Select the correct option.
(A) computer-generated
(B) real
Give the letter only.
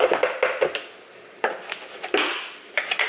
B